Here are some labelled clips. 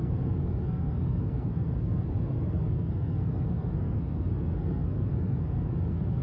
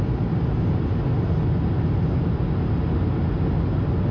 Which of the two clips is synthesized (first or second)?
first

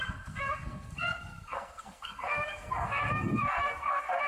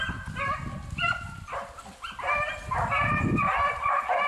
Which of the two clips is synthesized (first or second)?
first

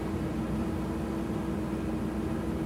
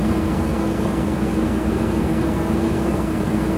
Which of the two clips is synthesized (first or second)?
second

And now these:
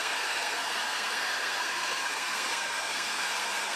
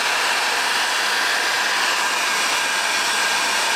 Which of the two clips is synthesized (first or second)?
first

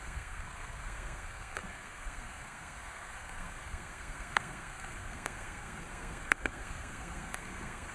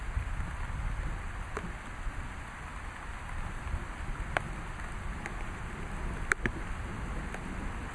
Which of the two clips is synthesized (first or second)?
first